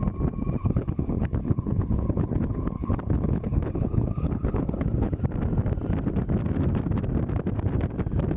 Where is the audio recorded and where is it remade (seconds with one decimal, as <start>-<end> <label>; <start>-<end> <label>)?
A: 0.0-0.6 recorded; 0.6-5.2 remade; 5.2-8.4 recorded